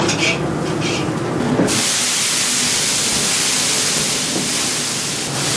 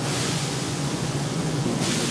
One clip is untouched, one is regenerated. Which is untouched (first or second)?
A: first